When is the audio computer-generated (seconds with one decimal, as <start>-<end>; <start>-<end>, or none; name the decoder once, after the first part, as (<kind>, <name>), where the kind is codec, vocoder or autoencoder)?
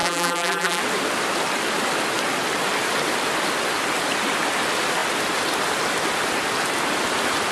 0.0-0.8 (vocoder, BigVGAN v2)